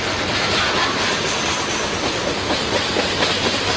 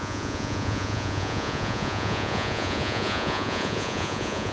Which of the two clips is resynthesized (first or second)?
second